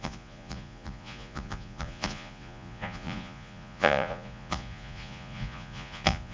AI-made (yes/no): yes